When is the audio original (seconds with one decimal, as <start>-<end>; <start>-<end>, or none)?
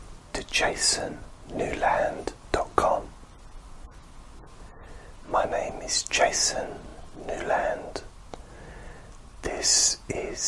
0.0-9.7